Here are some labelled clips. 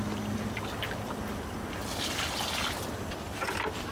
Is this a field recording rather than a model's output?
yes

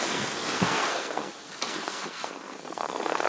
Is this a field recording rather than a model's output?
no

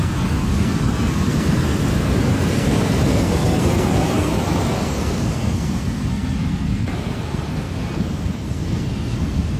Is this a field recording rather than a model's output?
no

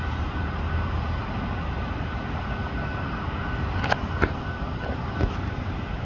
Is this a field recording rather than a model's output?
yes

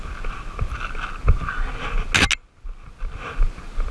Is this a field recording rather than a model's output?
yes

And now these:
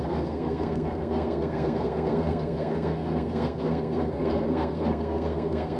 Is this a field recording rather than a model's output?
no